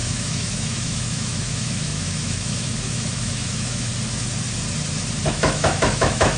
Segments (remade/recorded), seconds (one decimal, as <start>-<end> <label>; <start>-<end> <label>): 0.0-3.9 remade; 3.9-5.3 recorded; 5.3-6.4 remade